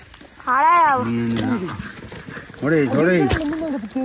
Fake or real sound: real